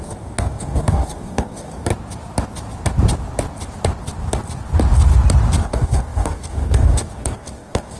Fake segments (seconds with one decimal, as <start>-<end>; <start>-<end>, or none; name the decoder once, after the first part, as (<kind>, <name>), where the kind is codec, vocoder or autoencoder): 0.0-1.9 (codec, DAC); 5.6-8.0